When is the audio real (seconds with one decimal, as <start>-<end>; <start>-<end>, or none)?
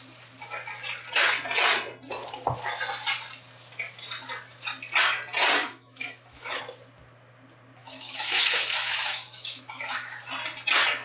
0.0-5.6; 6.6-7.8; 10.2-11.0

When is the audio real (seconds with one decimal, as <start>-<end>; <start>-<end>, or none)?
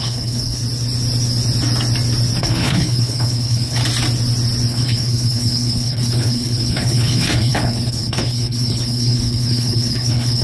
0.6-2.4; 3.8-4.7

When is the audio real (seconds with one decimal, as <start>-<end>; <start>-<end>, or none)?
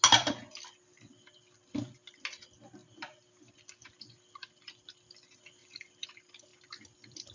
0.0-2.8; 4.7-5.6; 6.1-7.3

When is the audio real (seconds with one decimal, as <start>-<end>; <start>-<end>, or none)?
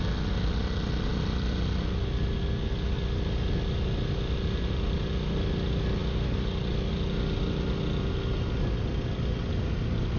0.0-10.2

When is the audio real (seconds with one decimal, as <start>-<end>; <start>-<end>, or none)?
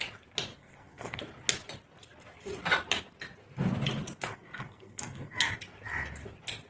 0.0-0.5; 1.2-4.3; 5.5-6.7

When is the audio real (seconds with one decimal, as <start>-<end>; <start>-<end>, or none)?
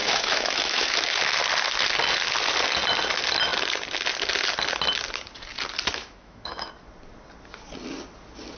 1.4-6.0; 6.7-8.6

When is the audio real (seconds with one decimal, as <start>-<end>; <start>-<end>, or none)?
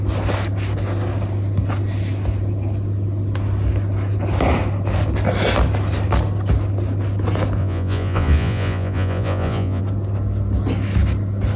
0.0-7.6; 9.8-11.6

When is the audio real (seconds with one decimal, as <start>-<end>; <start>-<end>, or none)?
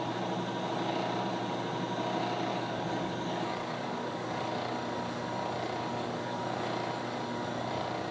0.0-2.5; 4.5-5.9; 6.4-8.1